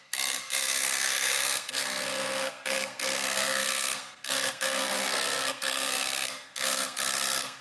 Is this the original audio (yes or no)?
no